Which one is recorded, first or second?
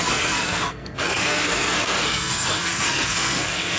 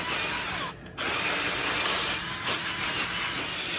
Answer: second